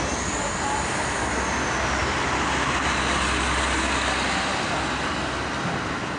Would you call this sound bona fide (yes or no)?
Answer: yes